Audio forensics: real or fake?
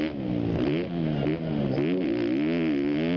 real